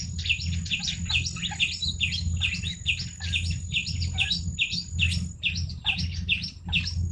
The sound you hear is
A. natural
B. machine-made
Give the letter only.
A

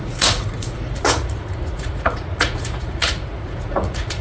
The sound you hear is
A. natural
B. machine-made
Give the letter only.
B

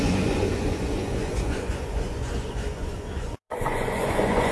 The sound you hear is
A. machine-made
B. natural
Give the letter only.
A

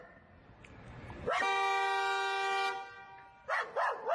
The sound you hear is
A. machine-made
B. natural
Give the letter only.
B